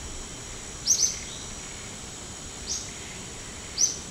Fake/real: real